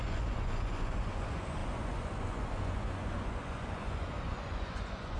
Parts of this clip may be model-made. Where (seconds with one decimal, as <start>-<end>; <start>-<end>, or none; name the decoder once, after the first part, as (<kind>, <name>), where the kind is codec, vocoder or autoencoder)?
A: 0.0-5.2 (vocoder, Vocos)